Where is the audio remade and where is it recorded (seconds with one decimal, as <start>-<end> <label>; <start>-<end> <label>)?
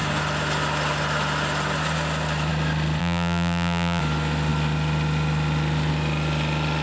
0.0-3.0 recorded; 3.0-4.0 remade; 4.0-6.8 recorded